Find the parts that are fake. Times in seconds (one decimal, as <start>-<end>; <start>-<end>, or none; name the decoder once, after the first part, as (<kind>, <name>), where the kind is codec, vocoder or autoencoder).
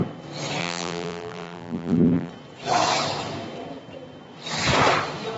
0.6-2.3 (vocoder, BigVGAN v2)